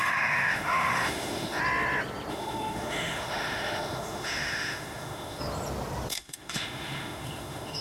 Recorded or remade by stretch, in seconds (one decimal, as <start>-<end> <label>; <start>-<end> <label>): 0.0-1.6 remade; 1.6-2.3 recorded; 2.3-5.4 remade; 5.4-6.1 recorded; 6.1-7.8 remade